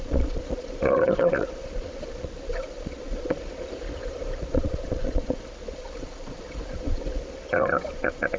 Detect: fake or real fake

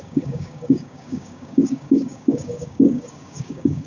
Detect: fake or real fake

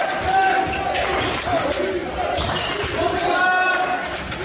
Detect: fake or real real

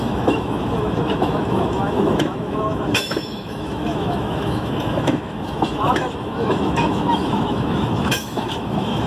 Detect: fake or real fake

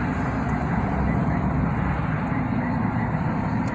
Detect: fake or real real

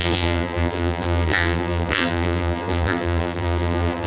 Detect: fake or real fake